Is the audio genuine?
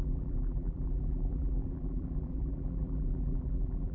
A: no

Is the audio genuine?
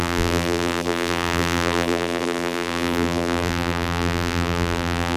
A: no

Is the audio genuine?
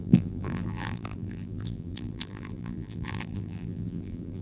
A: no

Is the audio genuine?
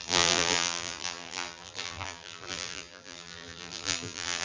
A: no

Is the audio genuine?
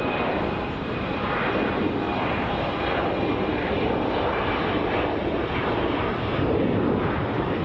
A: yes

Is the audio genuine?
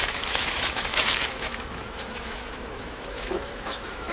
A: no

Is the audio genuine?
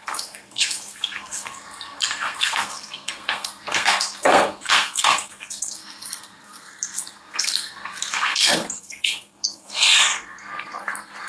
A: no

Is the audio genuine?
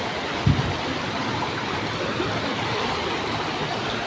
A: yes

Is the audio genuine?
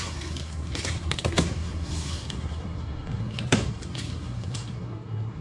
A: no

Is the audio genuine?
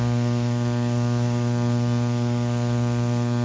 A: no